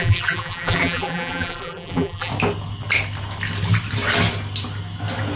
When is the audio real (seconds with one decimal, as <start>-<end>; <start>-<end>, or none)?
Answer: 2.3-5.4